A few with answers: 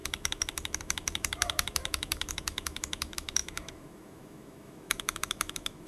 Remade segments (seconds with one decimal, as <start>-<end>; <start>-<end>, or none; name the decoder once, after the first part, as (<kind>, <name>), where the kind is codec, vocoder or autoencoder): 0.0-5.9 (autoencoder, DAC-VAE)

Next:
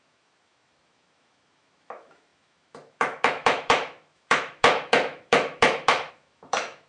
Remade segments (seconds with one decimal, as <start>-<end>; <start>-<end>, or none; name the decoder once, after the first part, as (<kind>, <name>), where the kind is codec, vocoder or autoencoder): 0.0-6.9 (autoencoder, DAC-VAE)

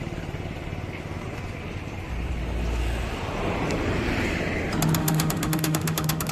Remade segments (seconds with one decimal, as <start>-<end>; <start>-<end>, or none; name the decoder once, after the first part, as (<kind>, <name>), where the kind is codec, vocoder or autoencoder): 5.0-6.3 (autoencoder, DAC-VAE)

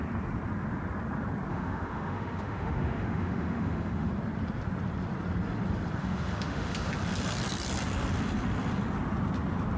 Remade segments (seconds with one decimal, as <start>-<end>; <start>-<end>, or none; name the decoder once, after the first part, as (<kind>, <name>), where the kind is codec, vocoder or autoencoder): 1.5-4.1 (autoencoder, DAC-VAE); 6.0-6.9

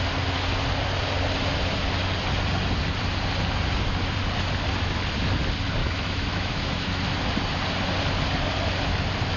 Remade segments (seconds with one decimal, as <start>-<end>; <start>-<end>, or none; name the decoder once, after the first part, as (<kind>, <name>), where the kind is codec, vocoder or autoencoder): 5.8-7.0 (autoencoder, DAC-VAE)